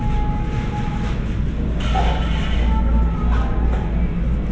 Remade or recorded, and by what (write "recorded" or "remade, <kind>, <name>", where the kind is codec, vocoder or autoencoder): recorded